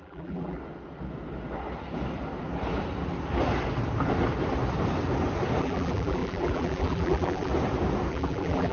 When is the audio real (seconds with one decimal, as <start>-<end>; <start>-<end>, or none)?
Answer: 0.6-5.6; 7.5-8.1